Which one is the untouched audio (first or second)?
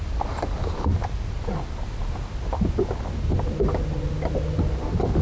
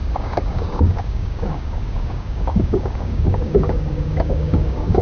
first